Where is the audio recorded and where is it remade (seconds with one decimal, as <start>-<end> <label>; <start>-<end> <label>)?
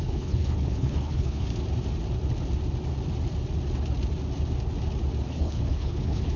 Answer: 0.0-1.5 remade; 1.5-5.3 recorded; 5.3-6.4 remade